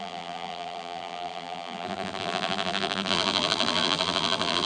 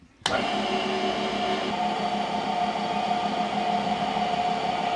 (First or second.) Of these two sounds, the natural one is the second